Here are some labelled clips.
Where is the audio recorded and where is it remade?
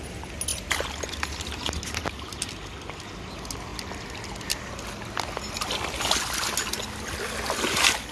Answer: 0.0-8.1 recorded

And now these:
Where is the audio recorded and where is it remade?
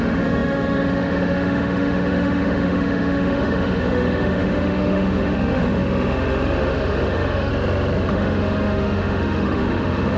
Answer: 0.0-7.5 remade; 7.5-8.1 recorded; 8.1-10.2 remade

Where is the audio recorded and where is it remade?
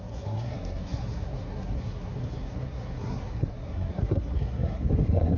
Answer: 0.0-5.4 remade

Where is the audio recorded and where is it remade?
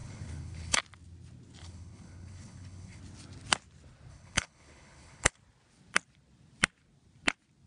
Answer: 0.0-0.8 remade; 0.8-1.6 recorded; 1.6-3.0 remade; 3.0-4.1 recorded; 4.1-5.3 remade; 5.3-7.7 recorded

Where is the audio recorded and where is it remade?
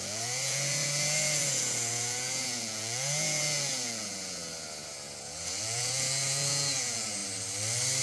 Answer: 0.0-7.2 remade; 7.2-8.0 recorded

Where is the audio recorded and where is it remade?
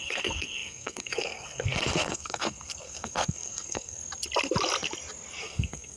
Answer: 0.0-4.0 remade; 4.0-5.4 recorded; 5.4-6.0 remade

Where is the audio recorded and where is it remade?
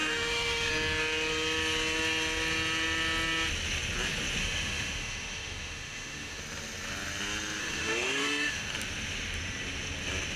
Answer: 0.0-0.7 remade; 0.7-4.4 recorded; 4.4-6.4 remade; 6.4-7.6 recorded; 7.6-8.7 remade; 8.7-10.4 recorded